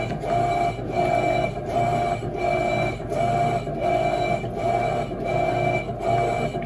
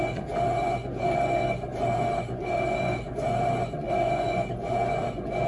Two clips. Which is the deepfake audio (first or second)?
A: second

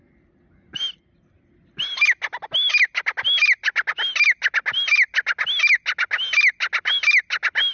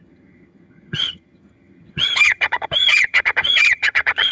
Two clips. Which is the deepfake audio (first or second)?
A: second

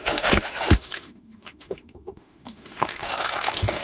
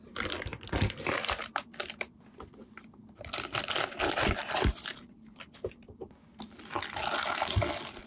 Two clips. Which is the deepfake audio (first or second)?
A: first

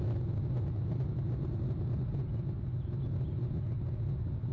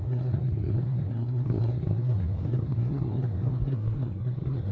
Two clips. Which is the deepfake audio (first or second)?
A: second